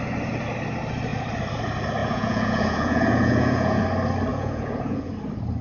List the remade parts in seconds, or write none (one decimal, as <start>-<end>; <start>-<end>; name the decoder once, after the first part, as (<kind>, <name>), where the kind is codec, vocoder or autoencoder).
2.0-3.8 (vocoder, Vocos); 4.3-5.1